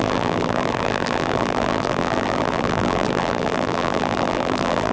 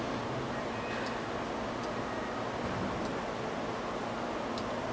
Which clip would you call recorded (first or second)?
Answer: second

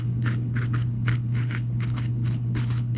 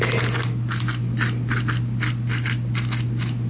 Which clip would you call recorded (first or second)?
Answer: second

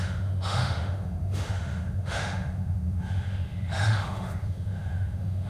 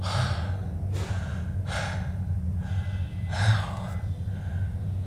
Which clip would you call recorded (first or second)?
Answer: second